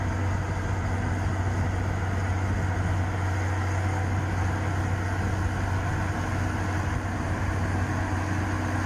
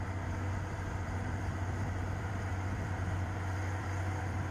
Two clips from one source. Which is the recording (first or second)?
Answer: first